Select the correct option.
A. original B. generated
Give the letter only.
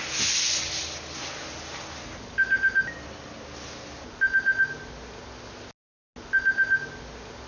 A